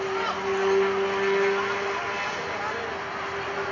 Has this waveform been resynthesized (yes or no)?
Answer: no